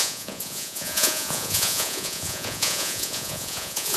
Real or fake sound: fake